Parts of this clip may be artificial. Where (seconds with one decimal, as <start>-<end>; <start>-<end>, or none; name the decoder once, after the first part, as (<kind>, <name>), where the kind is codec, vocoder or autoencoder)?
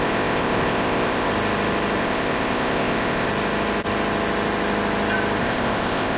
0.0-1.3 (codec, ZipCodec); 2.0-3.3; 5.4-6.2